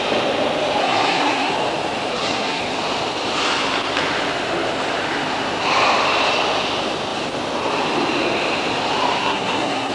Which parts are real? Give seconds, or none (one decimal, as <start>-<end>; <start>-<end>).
0.0-0.8; 1.5-2.1; 2.6-9.2